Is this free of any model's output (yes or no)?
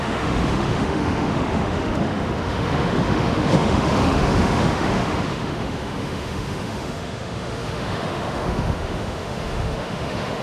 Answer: no